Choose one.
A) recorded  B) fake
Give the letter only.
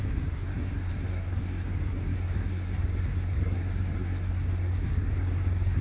B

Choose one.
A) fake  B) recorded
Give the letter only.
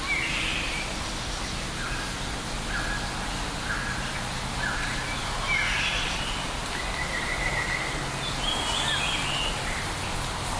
B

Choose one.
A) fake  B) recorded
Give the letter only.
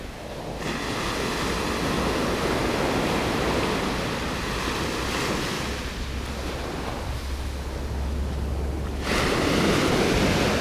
B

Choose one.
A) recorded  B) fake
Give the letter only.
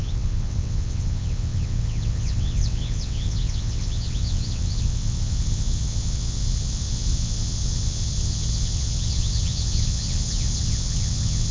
B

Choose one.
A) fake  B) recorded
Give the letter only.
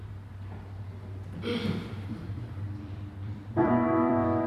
A